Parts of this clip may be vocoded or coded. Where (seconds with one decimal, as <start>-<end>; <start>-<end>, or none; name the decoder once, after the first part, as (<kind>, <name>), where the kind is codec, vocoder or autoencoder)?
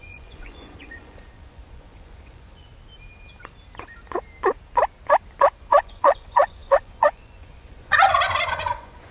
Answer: 0.0-2.7 (vocoder, Vocos); 5.6-9.1